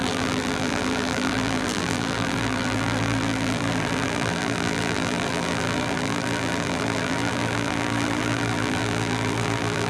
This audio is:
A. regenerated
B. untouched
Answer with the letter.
A